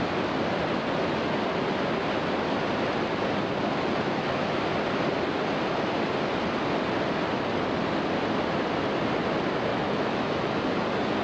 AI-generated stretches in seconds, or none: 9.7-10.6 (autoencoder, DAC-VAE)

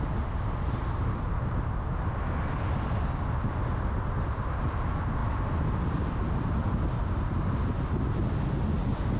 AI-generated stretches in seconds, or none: none

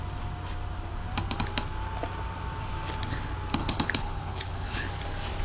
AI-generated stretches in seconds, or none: 3.6-4.9 (codec, HILCodec)

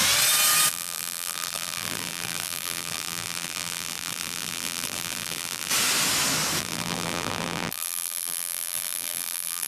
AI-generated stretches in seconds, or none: 0.7-5.7 (vocoder, BigVGAN v2); 6.6-9.7

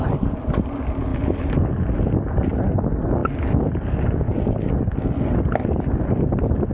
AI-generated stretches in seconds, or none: none

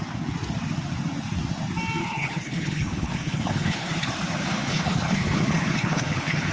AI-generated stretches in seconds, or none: 2.0-3.9 (codec, HILCodec); 4.7-6.5

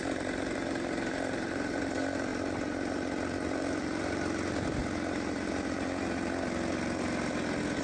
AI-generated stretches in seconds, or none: 0.0-2.3 (vocoder, BigVGAN v2); 3.5-4.8

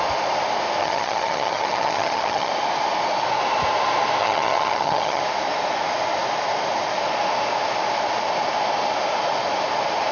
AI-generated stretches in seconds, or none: 0.8-2.5 (vocoder, HiFi-GAN); 4.2-5.2